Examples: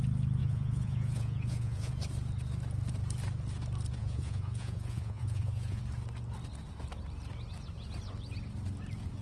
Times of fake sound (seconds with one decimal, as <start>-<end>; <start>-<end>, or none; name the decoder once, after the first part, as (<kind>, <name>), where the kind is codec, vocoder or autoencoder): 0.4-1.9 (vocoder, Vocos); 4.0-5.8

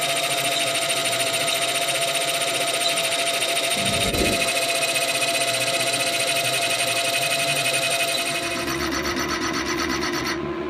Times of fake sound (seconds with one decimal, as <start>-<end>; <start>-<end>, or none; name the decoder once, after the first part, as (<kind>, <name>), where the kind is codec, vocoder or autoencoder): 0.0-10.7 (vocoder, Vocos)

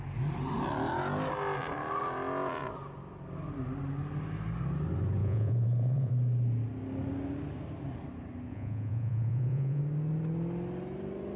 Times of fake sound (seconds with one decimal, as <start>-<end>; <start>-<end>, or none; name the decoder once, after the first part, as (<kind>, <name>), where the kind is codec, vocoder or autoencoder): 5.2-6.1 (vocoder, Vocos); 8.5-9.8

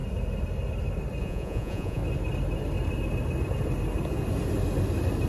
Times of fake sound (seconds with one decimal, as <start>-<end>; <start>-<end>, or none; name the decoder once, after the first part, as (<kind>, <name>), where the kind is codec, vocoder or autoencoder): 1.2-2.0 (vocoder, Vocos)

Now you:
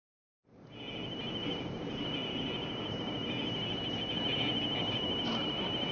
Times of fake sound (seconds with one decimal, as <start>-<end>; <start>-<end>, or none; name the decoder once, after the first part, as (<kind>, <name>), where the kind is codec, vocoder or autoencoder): none

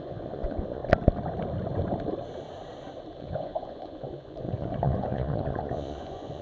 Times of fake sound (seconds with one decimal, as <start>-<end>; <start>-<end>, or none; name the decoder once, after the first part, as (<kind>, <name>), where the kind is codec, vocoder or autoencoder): 0.0-0.8 (vocoder, Vocos); 3.2-6.4

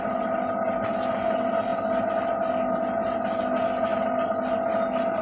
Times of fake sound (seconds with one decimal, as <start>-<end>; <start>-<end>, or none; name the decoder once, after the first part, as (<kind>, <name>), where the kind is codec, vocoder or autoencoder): none